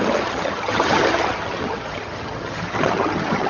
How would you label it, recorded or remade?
remade